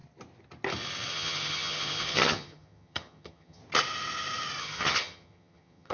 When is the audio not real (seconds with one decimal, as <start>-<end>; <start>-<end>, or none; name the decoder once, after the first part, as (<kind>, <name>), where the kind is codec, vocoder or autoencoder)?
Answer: 1.1-3.6 (vocoder, HiFi-GAN); 4.6-5.9